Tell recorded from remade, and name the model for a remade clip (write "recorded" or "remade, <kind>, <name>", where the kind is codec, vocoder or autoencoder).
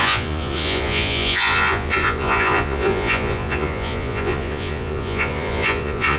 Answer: remade, vocoder, Vocos